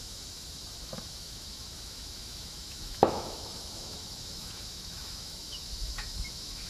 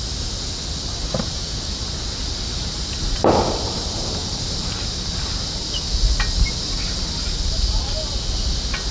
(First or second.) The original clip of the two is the second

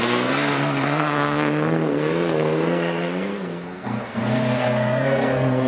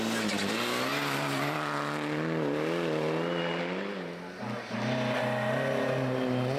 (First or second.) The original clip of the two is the second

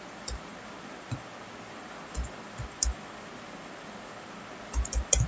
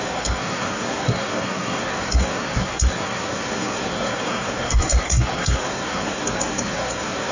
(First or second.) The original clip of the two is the first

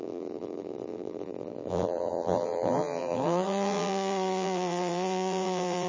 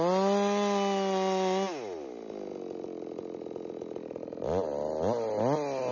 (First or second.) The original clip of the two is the second